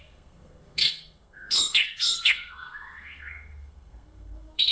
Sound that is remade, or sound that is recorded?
remade